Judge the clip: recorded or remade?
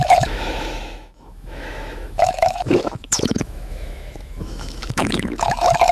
remade